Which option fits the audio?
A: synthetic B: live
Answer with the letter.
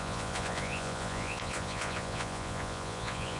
A